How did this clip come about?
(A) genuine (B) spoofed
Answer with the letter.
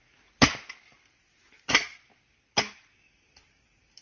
A